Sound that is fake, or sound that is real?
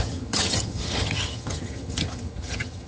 fake